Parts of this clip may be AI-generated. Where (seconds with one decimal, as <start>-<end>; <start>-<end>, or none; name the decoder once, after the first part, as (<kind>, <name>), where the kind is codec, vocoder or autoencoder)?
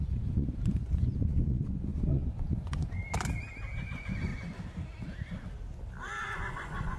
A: 0.0-3.0 (vocoder, Vocos); 3.8-4.3; 6.2-7.0